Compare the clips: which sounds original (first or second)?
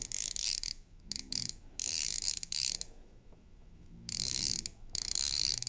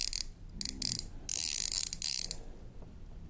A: second